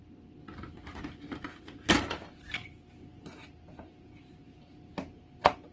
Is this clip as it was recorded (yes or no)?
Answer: yes